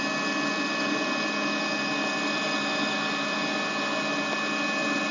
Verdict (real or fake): real